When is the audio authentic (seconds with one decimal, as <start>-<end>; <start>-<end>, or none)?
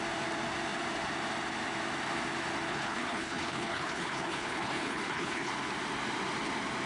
0.0-2.7; 5.5-6.9